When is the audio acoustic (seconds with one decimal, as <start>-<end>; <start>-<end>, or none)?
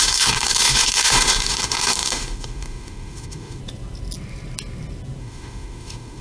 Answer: 3.6-5.2